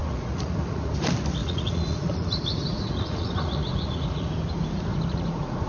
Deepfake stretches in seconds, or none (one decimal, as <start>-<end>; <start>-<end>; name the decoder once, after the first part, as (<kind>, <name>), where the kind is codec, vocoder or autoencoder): 0.0-0.9 (vocoder, Vocos); 1.4-4.3; 4.9-5.7